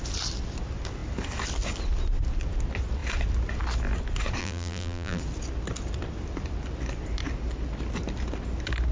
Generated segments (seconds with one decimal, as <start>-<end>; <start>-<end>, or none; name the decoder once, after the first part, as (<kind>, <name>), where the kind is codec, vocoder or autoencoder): 4.4-5.2 (vocoder, BigVGAN v2)